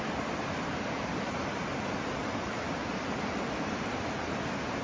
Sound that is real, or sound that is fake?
fake